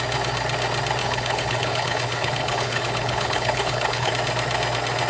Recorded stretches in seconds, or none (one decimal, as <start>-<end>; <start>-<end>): 0.0-1.0; 4.1-5.1